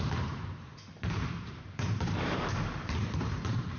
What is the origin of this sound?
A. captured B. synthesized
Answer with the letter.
B